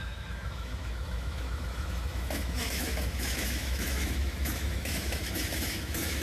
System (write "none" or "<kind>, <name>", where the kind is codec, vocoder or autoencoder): autoencoder, DAC-VAE